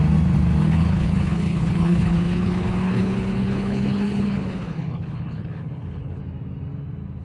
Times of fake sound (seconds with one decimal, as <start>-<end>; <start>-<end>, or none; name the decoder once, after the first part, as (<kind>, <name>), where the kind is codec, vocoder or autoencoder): 0.6-6.2 (codec, HILCodec)